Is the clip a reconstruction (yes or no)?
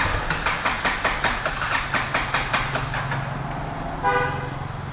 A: no